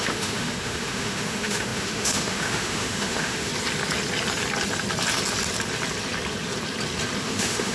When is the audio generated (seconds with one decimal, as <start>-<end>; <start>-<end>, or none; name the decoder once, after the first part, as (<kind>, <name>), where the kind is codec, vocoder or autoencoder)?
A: 0.0-3.5 (autoencoder, DAC-VAE); 7.2-7.7